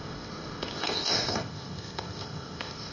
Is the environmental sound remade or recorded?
remade